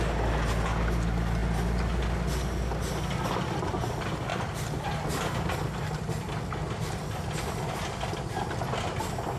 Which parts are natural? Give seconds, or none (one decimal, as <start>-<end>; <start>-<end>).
0.0-9.4